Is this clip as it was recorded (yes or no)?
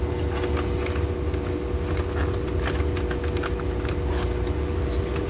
yes